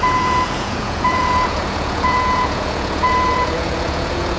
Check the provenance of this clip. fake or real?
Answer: fake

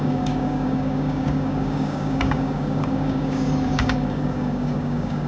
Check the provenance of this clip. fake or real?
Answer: fake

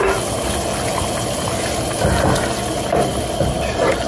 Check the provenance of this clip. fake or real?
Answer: real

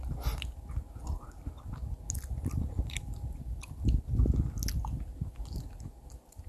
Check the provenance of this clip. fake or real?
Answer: real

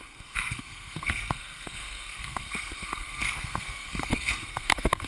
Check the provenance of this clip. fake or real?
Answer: fake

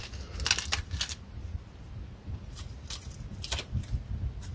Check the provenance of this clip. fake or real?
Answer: real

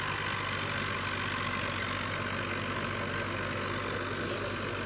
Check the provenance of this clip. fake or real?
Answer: real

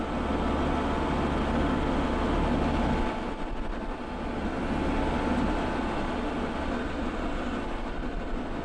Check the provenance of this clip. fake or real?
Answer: real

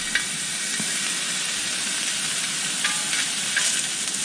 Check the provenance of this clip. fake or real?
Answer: real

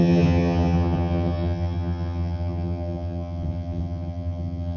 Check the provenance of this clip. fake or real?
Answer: fake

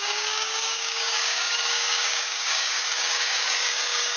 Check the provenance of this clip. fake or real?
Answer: fake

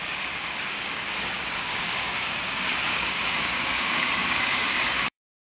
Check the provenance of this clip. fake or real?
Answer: fake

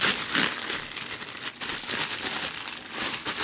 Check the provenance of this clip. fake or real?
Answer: real